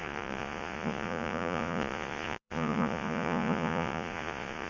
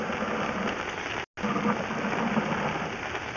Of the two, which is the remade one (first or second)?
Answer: first